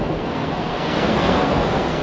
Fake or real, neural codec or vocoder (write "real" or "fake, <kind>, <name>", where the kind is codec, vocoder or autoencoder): fake, codec, SNAC